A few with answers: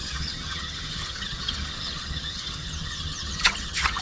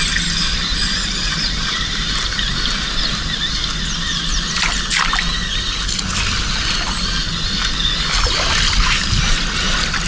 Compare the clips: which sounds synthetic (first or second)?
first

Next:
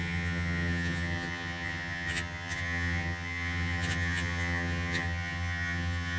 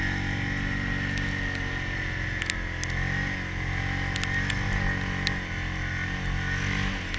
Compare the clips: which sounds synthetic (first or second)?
first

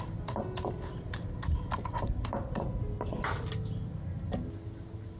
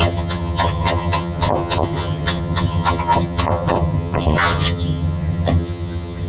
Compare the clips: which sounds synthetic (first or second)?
second